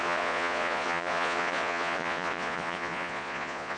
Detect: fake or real fake